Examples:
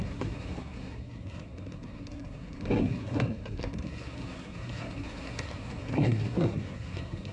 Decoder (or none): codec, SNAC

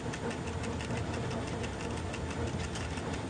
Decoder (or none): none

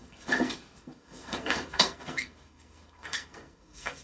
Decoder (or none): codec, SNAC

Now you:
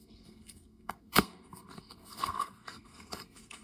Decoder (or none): codec, SNAC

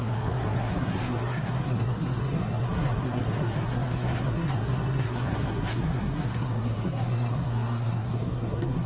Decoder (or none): codec, SNAC